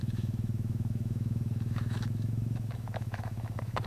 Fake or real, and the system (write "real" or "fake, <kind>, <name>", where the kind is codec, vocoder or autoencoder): fake, autoencoder, DAC-VAE